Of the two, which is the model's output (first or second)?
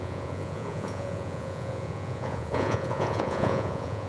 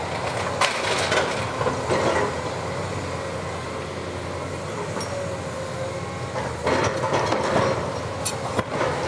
first